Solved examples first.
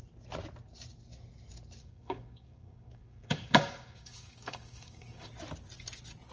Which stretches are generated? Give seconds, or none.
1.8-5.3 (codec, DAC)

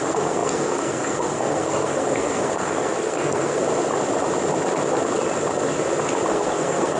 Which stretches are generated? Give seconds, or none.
0.0-3.6 (codec, SNAC); 6.3-7.0

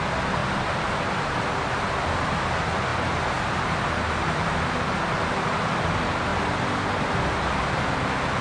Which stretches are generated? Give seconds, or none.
2.9-4.6 (vocoder, BigVGAN v2)